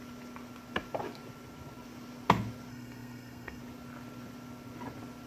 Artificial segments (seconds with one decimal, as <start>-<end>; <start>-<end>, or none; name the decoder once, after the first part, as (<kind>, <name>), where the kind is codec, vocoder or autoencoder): 2.7-3.6 (codec, SNAC)